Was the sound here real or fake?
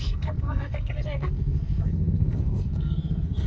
fake